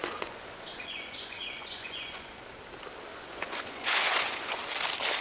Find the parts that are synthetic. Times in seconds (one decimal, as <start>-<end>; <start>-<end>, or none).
0.0-2.3; 3.1-4.6